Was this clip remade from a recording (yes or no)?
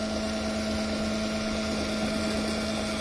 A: no